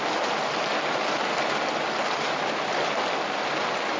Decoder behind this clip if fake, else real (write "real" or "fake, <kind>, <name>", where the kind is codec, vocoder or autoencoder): real